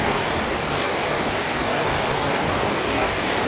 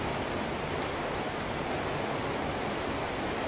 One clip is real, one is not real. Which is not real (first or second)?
first